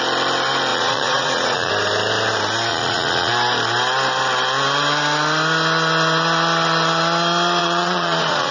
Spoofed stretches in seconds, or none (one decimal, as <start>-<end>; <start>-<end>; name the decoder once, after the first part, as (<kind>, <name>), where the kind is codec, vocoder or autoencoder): 0.7-1.7 (vocoder, Vocos); 2.7-3.3; 7.6-8.5